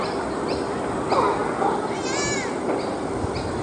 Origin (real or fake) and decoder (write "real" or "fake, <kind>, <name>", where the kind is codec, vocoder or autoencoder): fake, vocoder, BigVGAN v2